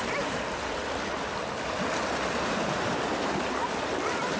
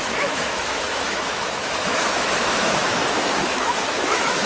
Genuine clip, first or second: first